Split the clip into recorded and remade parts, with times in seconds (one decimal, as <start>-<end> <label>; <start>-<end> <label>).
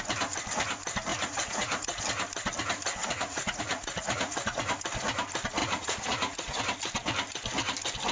0.0-1.1 recorded; 1.1-2.0 remade; 2.0-3.0 recorded; 3.0-4.7 remade; 4.7-5.6 recorded; 5.6-6.6 remade; 6.6-8.1 recorded